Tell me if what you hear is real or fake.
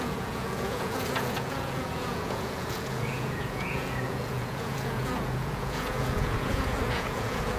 fake